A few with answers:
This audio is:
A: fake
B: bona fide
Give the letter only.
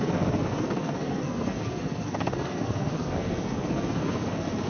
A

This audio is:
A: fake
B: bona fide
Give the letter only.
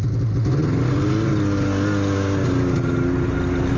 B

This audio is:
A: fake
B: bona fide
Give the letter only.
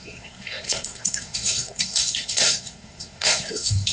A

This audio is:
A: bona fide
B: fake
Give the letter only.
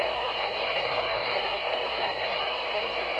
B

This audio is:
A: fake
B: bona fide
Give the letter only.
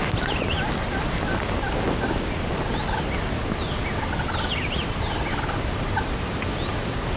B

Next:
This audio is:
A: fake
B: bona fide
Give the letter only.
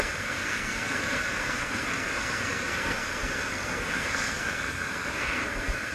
A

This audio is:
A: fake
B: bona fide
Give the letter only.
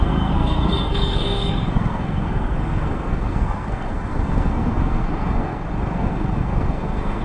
A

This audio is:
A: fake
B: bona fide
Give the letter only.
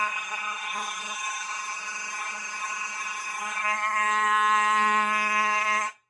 A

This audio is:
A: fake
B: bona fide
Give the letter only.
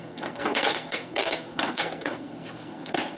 A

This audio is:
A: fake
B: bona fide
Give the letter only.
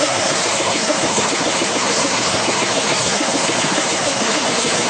A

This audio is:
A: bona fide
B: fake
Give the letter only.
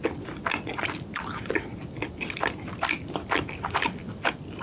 A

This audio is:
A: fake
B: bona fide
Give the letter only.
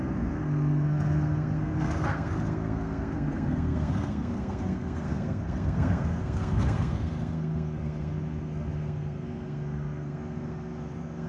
A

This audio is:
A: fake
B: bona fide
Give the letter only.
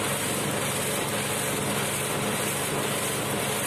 B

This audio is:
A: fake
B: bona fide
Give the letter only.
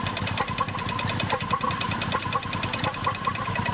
B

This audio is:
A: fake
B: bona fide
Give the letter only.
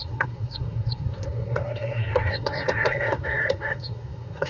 A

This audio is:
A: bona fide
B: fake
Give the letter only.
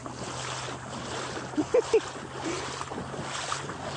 A